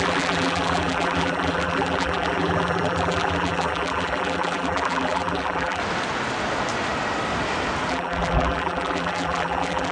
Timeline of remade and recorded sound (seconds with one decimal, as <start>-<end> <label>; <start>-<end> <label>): 0.0-5.8 remade; 5.8-7.9 recorded; 7.9-9.9 remade